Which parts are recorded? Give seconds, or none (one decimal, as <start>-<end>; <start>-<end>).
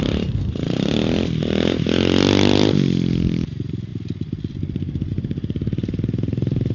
0.0-6.7